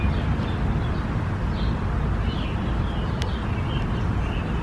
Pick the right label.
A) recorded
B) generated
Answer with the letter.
A